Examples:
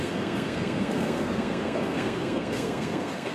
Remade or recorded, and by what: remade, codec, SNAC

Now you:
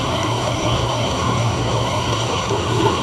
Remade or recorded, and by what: remade, codec, SNAC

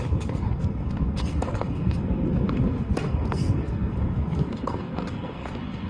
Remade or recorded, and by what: remade, codec, SNAC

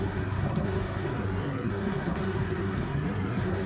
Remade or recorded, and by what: remade, codec, SNAC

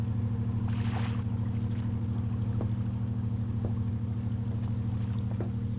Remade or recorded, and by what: recorded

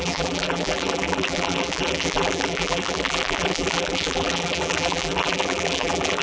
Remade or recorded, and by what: remade, vocoder, BigVGAN v2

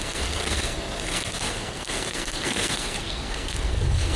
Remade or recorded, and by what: remade, codec, SNAC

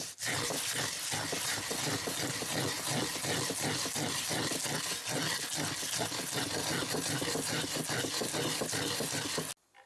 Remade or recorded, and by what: recorded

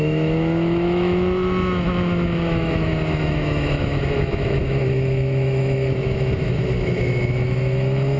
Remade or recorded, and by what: remade, autoencoder, DAC-VAE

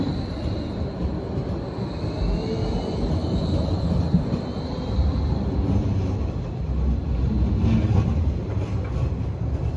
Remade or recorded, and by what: recorded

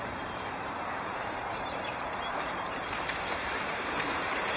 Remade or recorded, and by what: remade, vocoder, BigVGAN v2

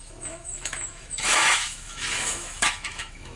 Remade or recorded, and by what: remade, autoencoder, DAC-VAE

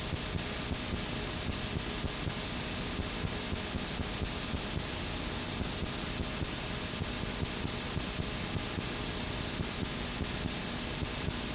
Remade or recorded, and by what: recorded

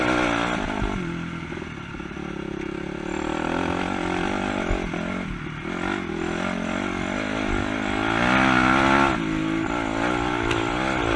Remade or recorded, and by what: recorded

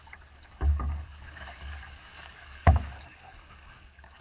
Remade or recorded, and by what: remade, codec, DAC